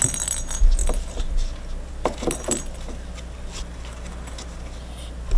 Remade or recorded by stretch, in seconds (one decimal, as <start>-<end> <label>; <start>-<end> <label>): 0.0-5.4 recorded